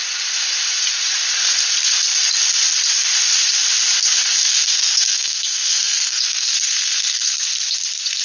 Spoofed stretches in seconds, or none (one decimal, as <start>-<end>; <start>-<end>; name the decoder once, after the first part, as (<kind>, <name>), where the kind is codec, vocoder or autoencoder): 4.4-7.4 (codec, SNAC)